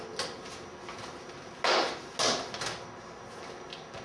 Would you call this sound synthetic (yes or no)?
no